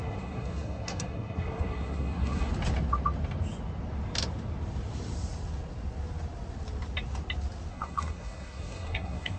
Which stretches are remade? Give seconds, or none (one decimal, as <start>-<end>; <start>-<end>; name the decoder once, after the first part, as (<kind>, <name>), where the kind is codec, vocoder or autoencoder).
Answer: 0.0-2.5 (codec, SNAC); 7.7-9.4